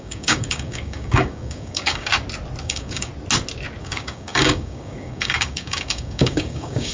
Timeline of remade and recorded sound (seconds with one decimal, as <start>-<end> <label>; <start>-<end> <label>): 0.0-2.1 remade; 2.1-2.6 recorded; 2.6-3.1 remade; 3.1-3.8 recorded; 3.8-6.9 remade